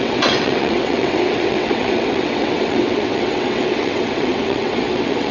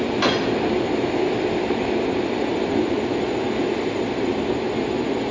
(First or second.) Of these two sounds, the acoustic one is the second